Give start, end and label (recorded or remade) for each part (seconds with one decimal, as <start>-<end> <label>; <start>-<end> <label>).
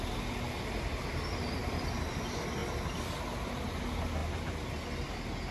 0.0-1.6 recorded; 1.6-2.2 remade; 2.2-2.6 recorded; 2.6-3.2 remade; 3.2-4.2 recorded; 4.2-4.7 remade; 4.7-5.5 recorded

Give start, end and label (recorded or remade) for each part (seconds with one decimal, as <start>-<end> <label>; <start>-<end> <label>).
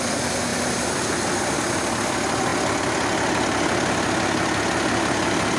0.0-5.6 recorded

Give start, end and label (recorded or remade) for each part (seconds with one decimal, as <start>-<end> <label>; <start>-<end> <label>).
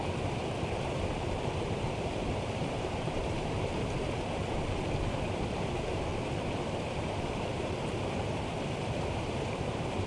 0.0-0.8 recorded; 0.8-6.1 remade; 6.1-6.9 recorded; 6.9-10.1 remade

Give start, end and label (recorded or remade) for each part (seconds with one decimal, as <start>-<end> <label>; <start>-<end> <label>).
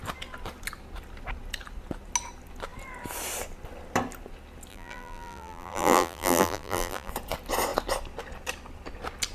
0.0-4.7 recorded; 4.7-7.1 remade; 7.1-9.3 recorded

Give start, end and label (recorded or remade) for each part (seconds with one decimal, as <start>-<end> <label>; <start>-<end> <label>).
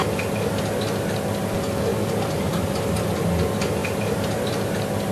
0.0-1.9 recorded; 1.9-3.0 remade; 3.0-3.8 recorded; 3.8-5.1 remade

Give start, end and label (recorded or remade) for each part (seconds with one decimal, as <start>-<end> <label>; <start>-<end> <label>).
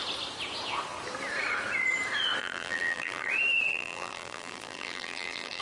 0.0-2.4 recorded; 2.4-3.3 remade; 3.3-3.7 recorded; 3.7-5.6 remade